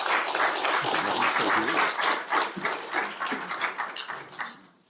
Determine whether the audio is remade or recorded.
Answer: recorded